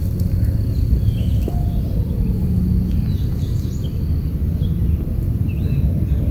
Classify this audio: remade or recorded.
recorded